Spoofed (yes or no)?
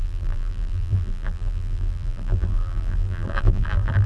yes